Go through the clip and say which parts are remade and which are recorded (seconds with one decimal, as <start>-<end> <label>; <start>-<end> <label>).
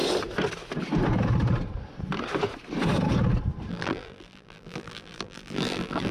0.0-3.7 recorded; 3.7-6.1 remade